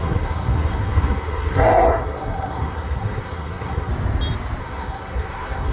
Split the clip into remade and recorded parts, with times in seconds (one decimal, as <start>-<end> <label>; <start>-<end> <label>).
0.0-3.9 remade; 3.9-4.6 recorded; 4.6-5.7 remade